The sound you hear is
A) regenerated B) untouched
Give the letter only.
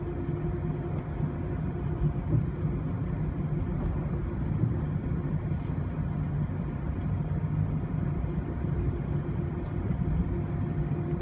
B